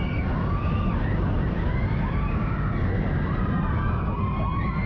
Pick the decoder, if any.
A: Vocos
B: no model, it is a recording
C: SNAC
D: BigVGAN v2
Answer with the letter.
B